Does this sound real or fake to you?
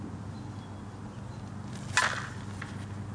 real